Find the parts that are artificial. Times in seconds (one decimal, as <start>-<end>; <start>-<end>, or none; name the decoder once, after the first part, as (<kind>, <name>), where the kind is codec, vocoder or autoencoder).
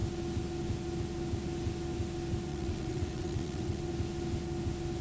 2.5-3.8 (vocoder, WaveNeXt)